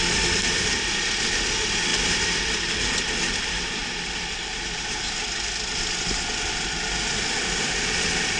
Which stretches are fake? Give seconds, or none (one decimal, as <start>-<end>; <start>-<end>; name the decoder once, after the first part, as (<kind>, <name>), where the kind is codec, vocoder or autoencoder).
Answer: none